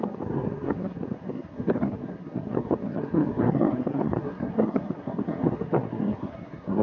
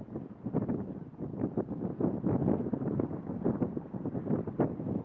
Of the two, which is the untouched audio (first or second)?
second